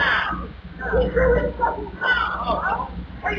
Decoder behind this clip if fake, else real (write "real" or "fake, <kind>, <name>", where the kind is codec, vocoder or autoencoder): real